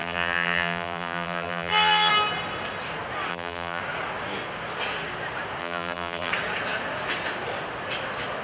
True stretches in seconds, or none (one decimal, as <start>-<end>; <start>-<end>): 2.1-3.3; 3.8-5.6; 6.3-8.4